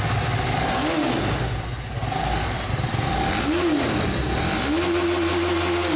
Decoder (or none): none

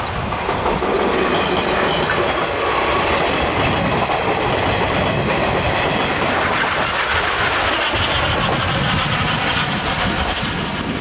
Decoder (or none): none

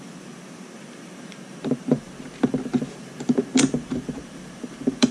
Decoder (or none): vocoder, BigVGAN v2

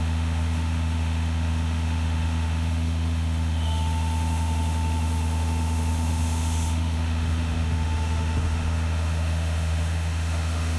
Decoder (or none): autoencoder, DAC-VAE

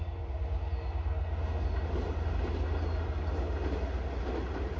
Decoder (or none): none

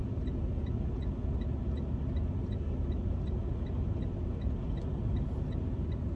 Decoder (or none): none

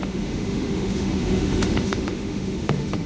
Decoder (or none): autoencoder, DAC-VAE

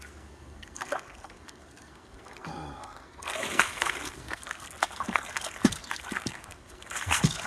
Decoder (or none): codec, SNAC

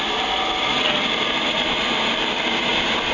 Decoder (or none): none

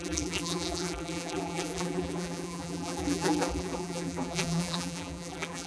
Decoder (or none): vocoder, BigVGAN v2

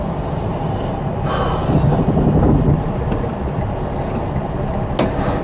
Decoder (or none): none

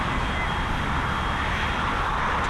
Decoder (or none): none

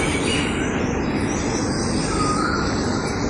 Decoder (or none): none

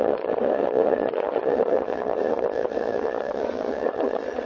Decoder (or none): vocoder, Vocos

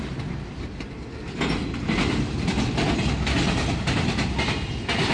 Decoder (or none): none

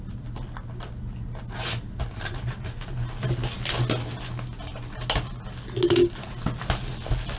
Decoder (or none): none